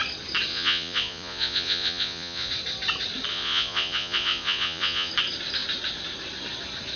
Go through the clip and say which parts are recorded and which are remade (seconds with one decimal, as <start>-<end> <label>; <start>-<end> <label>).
0.0-0.5 recorded; 0.5-2.5 remade; 2.5-3.3 recorded; 3.3-5.1 remade; 5.1-7.0 recorded